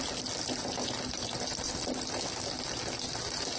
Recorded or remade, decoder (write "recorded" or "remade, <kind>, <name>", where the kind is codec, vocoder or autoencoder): recorded